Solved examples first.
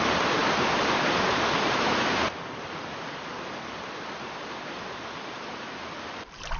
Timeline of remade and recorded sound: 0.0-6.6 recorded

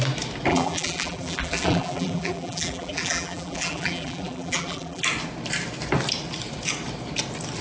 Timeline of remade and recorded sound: 0.0-0.5 recorded; 0.5-5.0 remade; 5.0-7.6 recorded

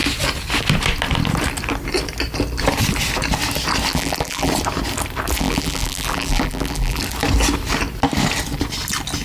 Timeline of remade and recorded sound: 0.0-3.9 recorded; 3.9-4.5 remade; 4.5-5.4 recorded; 5.4-7.0 remade; 7.0-9.2 recorded

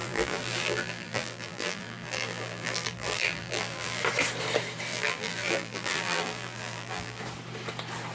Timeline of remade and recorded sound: 0.0-4.0 remade; 4.0-4.9 recorded; 4.9-7.2 remade; 7.2-8.1 recorded